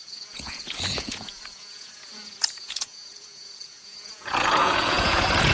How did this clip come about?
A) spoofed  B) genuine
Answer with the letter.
A